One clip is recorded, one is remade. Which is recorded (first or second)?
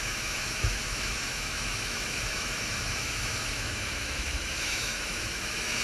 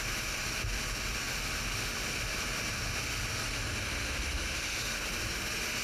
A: second